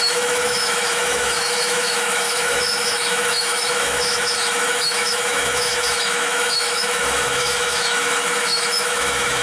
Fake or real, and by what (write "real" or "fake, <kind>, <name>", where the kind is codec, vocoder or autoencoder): fake, autoencoder, DAC-VAE